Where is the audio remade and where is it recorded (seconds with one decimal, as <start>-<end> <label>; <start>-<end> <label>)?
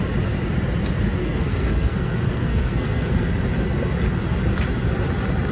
0.0-1.2 recorded; 1.2-3.3 remade; 3.3-5.5 recorded